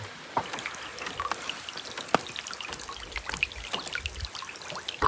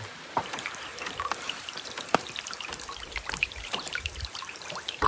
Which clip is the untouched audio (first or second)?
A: first